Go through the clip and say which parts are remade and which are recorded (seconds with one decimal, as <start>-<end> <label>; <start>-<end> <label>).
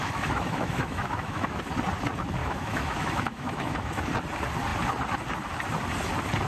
0.0-1.6 remade; 1.6-2.4 recorded; 2.4-4.0 remade; 4.0-6.5 recorded